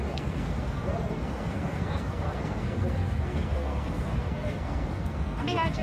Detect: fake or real fake